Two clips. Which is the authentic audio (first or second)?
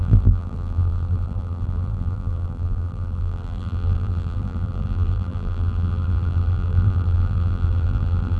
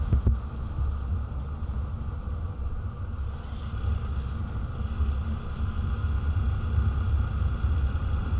second